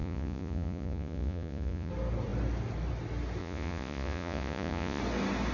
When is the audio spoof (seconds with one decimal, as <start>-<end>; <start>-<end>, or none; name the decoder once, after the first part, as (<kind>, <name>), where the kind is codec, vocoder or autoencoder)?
0.0-1.9 (vocoder, Vocos); 3.4-5.0